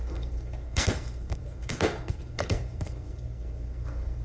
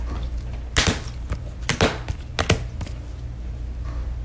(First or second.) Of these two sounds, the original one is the second